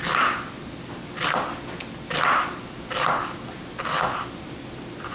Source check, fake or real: real